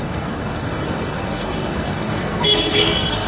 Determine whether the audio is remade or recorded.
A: remade